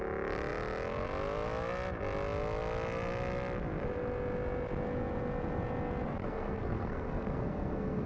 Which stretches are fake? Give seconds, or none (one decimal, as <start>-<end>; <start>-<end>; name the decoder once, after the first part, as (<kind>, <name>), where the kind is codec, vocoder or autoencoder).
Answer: 6.2-8.1 (codec, SNAC)